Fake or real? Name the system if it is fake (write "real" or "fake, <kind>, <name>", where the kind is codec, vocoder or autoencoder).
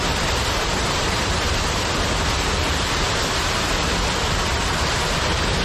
real